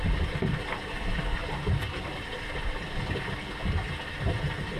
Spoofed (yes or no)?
no